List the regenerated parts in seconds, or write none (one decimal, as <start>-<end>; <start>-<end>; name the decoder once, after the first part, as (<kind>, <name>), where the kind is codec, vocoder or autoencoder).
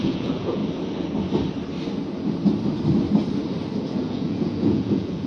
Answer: 0.0-0.6 (vocoder, Vocos); 3.8-5.3